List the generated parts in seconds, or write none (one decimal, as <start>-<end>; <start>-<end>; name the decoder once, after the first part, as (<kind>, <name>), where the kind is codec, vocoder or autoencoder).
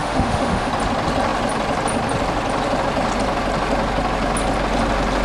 0.0-0.7 (autoencoder, DAC-VAE)